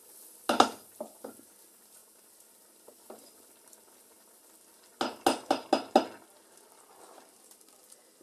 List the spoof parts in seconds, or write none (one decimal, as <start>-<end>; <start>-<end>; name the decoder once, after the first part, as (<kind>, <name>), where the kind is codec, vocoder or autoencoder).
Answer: none